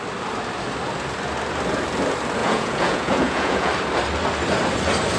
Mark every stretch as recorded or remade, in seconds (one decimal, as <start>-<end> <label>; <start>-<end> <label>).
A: 0.0-2.4 recorded; 2.4-3.7 remade; 3.7-5.2 recorded